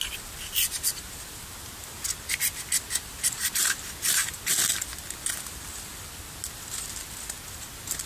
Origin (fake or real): real